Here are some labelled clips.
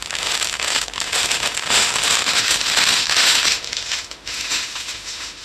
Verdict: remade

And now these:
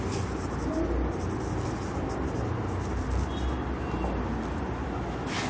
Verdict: recorded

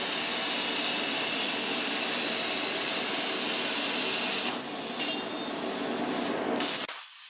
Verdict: recorded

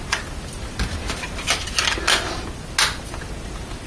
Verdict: recorded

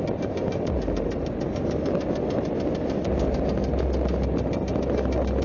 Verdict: recorded